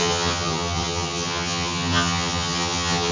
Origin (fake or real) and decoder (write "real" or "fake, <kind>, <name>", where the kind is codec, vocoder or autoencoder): fake, vocoder, HiFi-GAN